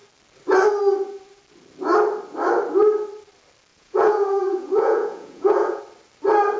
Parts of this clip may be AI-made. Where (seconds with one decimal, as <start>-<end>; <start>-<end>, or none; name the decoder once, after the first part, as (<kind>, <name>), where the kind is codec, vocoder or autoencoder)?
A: 3.7-5.8 (vocoder, Vocos)